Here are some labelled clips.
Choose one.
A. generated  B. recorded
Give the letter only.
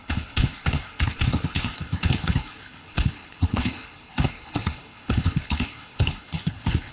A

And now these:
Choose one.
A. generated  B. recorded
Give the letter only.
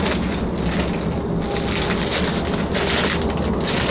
B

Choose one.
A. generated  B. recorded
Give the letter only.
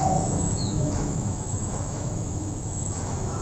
A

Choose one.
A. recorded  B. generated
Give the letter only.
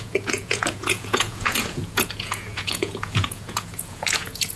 B